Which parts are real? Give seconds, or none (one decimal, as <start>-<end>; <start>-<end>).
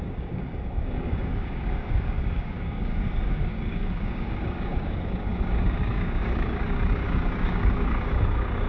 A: none